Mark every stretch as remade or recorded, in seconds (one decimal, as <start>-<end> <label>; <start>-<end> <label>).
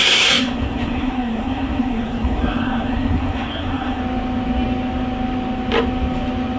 0.0-4.0 remade; 4.0-6.6 recorded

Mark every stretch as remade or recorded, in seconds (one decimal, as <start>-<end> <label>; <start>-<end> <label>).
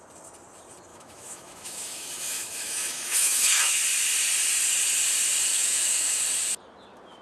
0.0-0.9 recorded; 0.9-3.8 remade; 3.8-5.5 recorded; 5.5-6.2 remade; 6.2-7.2 recorded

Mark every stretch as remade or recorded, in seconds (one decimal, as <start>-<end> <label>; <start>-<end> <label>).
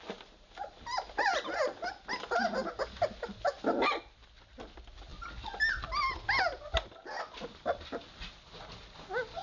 0.0-9.4 recorded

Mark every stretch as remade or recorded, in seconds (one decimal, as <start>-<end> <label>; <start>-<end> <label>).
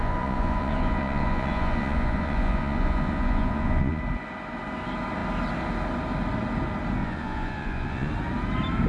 0.0-4.0 remade; 4.0-7.0 recorded; 7.0-8.1 remade; 8.1-8.9 recorded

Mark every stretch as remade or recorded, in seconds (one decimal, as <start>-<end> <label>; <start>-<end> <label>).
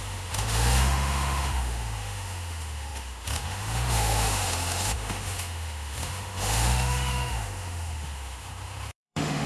0.0-9.5 remade